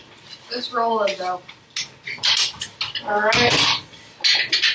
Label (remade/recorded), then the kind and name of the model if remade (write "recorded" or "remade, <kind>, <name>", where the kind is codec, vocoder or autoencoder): recorded